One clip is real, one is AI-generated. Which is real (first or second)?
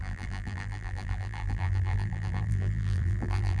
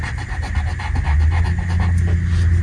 second